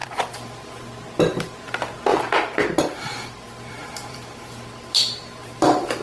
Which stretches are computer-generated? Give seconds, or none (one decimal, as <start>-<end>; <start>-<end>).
0.0-0.7; 2.1-6.0